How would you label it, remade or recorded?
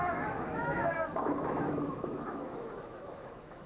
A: remade